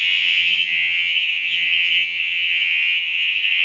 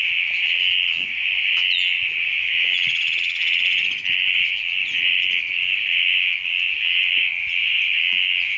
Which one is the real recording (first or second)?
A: second